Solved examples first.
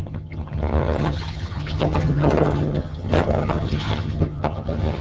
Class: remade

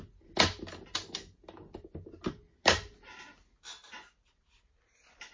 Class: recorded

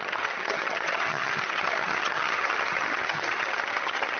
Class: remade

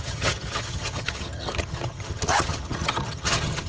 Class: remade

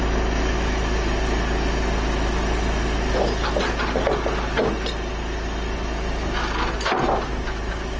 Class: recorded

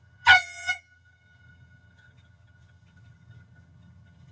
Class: remade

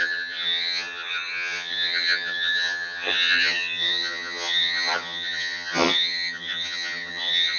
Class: remade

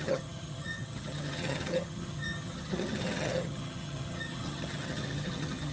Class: remade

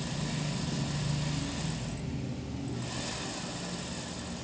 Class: recorded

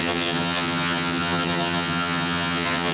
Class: remade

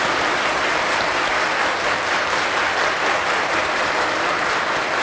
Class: recorded